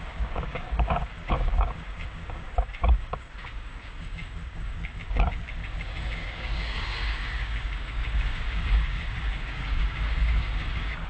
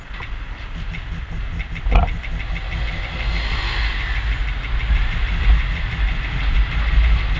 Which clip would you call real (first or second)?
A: second